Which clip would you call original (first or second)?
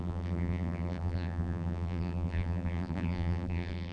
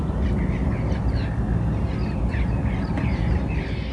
second